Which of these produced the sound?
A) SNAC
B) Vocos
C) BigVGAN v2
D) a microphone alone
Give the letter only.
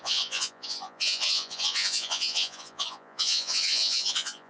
B